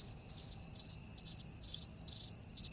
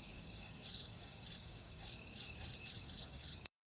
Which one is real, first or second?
first